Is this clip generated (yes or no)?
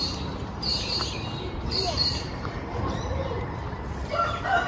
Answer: yes